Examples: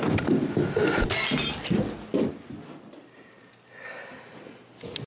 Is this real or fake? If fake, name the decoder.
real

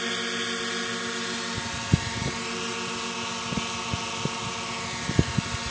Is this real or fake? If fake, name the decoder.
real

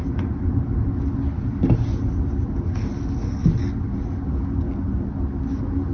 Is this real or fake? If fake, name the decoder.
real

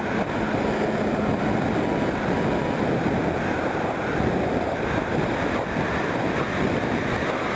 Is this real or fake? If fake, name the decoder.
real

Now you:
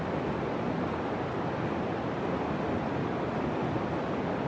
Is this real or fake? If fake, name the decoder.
real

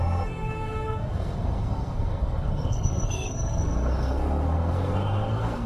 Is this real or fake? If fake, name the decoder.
fake, codec, SNAC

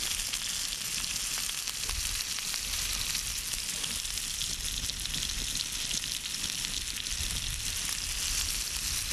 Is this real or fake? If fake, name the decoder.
real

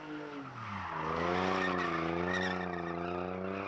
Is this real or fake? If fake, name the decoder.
real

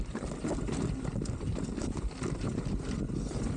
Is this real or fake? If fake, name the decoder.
real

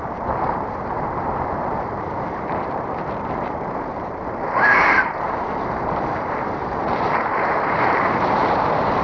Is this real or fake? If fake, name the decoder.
fake, vocoder, BigVGAN v2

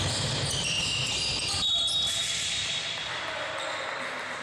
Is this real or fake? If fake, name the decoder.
real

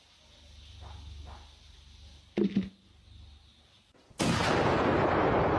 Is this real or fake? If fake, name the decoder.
real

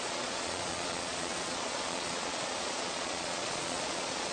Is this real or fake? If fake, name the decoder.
fake, vocoder, Vocos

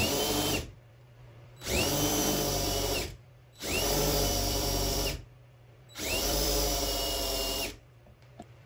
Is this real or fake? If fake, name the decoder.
fake, vocoder, BigVGAN v2